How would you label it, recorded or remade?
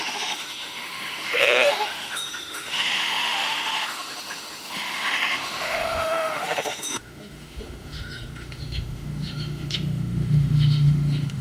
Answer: remade